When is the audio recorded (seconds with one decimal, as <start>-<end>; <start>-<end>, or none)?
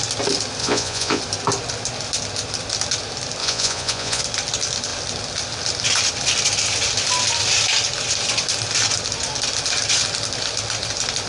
0.0-0.6; 1.2-3.4; 4.2-11.3